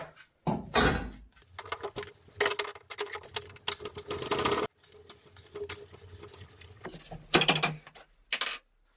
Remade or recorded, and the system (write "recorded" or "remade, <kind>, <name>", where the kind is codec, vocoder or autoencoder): recorded